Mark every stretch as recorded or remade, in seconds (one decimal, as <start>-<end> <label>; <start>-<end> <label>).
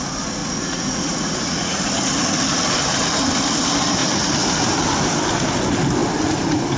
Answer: 0.0-0.4 recorded; 0.4-1.8 remade; 1.8-6.8 recorded